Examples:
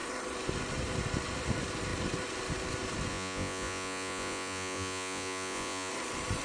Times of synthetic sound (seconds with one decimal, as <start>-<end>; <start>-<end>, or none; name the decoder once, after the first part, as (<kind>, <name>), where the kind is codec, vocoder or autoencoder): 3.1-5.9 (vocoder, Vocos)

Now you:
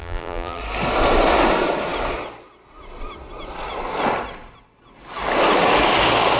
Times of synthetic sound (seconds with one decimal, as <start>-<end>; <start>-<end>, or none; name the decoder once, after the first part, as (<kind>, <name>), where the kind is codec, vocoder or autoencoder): 0.0-0.6 (vocoder, BigVGAN v2)

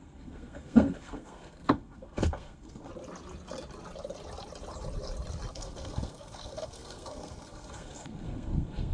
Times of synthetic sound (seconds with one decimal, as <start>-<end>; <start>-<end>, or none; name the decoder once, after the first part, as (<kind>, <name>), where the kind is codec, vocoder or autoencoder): 0.0-2.9 (codec, SNAC); 5.5-8.9

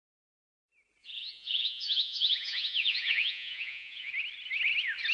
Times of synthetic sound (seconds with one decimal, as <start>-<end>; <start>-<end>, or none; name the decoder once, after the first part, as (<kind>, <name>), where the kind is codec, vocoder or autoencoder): 1.0-4.1 (vocoder, Vocos)

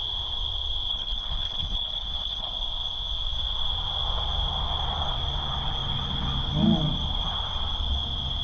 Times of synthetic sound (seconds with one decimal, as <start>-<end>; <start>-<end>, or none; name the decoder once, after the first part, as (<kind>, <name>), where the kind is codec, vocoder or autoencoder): 0.9-2.5 (codec, HILCodec)

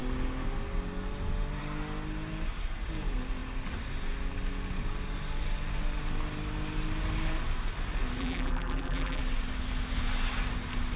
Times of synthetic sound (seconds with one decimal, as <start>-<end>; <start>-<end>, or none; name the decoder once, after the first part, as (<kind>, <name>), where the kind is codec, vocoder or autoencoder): 8.2-9.2 (vocoder, BigVGAN v2)